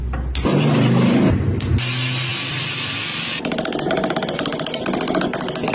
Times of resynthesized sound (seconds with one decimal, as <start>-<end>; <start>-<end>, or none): none